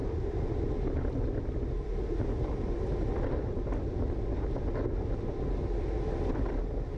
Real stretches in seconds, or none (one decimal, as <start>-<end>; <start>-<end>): 0.0-7.0